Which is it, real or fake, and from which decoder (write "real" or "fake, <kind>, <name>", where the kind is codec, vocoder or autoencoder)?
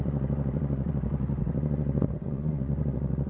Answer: fake, vocoder, Vocos